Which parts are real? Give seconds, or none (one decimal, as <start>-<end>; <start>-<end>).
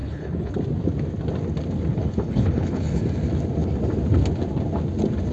0.5-1.9; 3.0-5.3